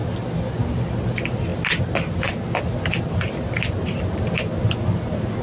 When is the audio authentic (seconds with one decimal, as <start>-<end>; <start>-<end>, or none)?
0.0-5.4

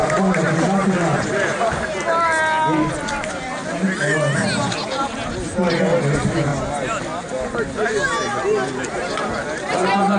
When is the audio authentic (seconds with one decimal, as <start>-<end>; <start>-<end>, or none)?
0.0-10.2

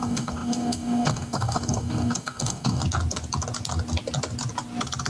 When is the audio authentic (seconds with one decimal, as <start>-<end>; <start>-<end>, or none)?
2.8-5.1

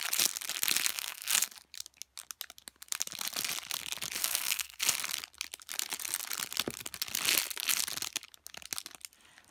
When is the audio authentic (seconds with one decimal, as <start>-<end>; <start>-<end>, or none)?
0.0-0.9; 1.5-4.2; 4.8-9.5